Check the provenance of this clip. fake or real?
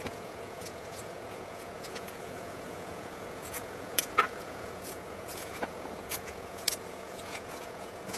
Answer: fake